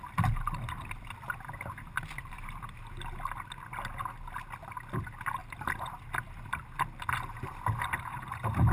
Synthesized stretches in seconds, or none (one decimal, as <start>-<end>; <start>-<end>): 0.0-2.7; 5.4-6.6